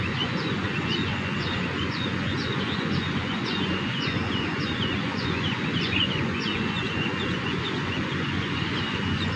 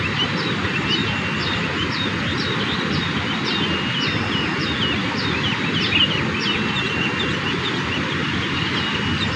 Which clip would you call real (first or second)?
second